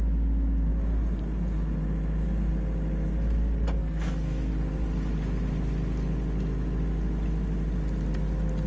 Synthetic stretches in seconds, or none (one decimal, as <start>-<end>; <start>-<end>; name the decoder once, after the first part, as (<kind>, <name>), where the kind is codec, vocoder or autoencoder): 3.8-4.5 (codec, SNAC)